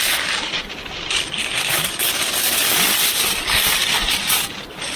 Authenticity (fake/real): real